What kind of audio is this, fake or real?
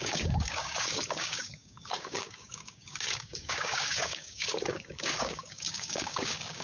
fake